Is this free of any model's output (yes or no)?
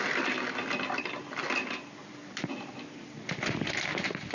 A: yes